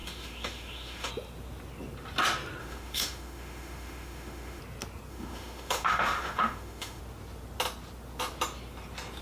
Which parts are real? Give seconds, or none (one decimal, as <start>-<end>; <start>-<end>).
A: 1.1-2.6; 4.6-5.1; 7.0-9.2